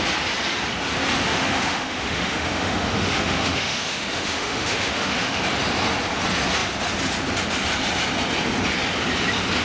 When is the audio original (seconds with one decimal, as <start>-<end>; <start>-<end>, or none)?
0.0-1.3; 5.4-9.6